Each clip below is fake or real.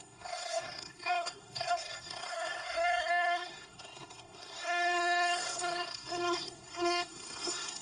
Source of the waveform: fake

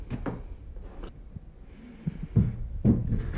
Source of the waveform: real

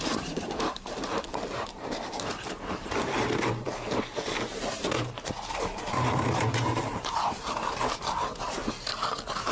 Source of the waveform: fake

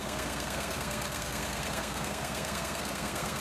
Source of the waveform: fake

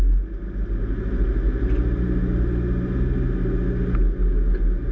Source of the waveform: real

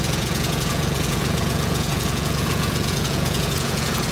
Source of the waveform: fake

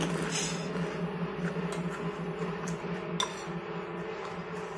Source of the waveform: real